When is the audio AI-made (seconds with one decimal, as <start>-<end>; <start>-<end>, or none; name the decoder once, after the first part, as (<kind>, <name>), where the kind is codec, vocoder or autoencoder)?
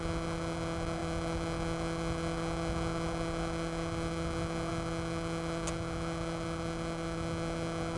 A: none